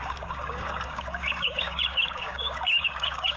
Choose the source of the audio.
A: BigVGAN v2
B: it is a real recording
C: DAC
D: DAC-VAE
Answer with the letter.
C